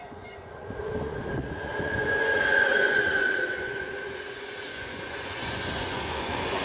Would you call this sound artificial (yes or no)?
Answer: yes